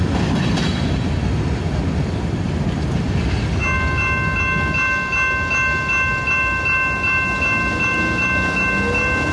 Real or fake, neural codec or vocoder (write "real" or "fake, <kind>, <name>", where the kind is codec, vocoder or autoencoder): real